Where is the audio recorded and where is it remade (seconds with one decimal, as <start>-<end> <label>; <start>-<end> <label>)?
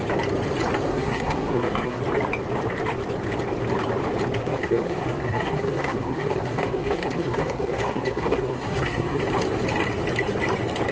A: 0.0-0.9 recorded; 0.9-2.0 remade; 2.0-4.4 recorded; 4.4-9.2 remade; 9.2-10.9 recorded